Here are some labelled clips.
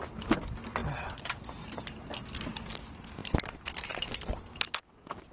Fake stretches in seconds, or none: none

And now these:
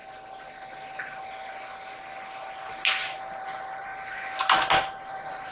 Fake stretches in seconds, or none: 3.3-3.9 (vocoder, BigVGAN v2); 4.8-5.5

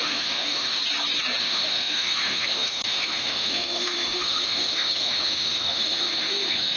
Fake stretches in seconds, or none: 0.0-0.8 (autoencoder, DAC-VAE); 1.4-6.8

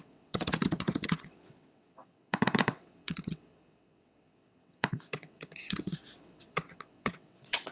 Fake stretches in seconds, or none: 0.0-7.7 (vocoder, WaveNeXt)